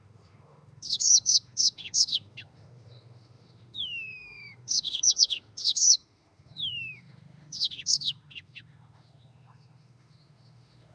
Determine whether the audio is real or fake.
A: fake